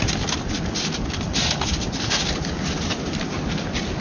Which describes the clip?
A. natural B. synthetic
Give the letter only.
A